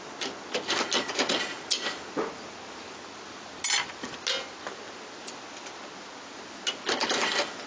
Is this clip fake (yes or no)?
no